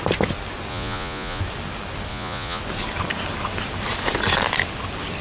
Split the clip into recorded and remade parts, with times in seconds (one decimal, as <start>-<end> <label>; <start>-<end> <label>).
0.0-0.7 recorded; 0.7-1.4 remade; 1.4-2.1 recorded; 2.1-2.6 remade; 2.6-5.2 recorded